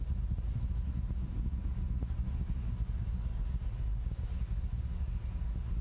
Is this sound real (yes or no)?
yes